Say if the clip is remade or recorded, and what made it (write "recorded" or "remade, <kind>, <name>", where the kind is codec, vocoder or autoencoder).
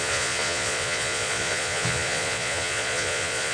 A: remade, vocoder, Vocos